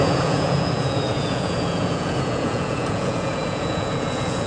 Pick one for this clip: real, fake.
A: fake